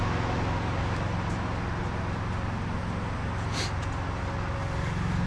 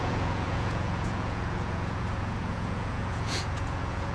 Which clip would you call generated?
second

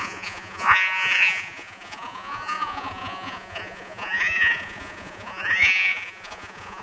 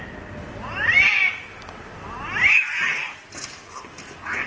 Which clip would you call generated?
first